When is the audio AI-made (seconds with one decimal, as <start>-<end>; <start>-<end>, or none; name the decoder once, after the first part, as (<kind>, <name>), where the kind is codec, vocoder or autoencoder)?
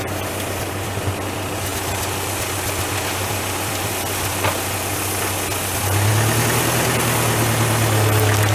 none